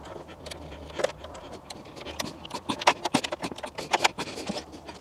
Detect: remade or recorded recorded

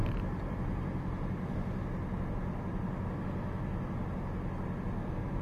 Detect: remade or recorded recorded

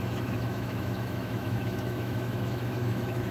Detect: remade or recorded remade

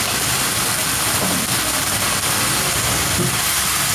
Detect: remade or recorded recorded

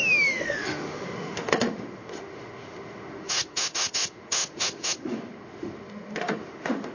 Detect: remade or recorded remade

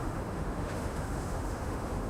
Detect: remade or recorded remade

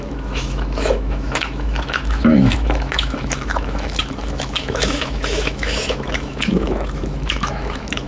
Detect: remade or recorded remade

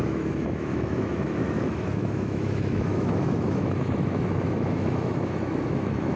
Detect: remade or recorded remade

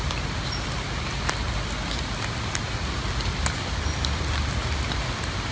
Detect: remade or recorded recorded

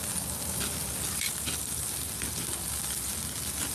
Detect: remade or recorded recorded